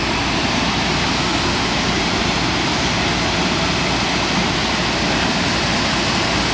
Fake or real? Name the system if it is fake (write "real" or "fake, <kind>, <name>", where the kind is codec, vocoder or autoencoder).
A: real